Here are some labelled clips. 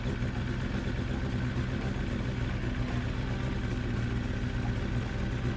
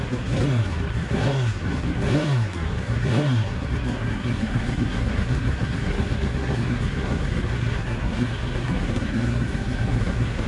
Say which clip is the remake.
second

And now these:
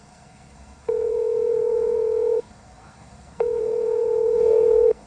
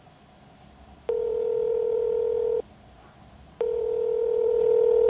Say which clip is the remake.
first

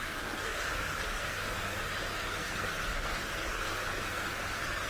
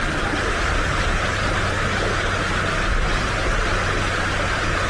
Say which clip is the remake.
first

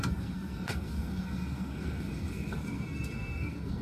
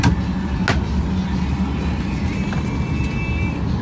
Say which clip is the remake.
first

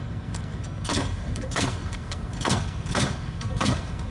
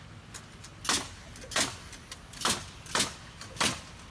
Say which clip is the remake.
first